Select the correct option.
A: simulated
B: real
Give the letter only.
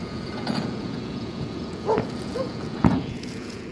A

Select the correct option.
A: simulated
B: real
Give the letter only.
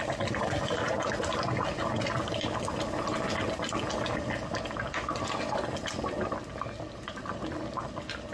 B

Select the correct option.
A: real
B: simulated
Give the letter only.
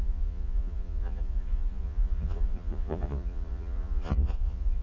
B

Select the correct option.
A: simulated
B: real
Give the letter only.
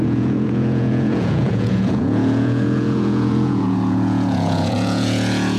A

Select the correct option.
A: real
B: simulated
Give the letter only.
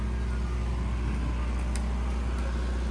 A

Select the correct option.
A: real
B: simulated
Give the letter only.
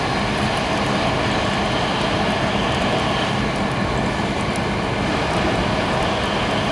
A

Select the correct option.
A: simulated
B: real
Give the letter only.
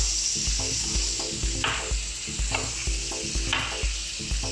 B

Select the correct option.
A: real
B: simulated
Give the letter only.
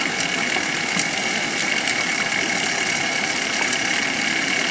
A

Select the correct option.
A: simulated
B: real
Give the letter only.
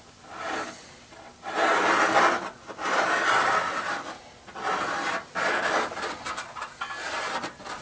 B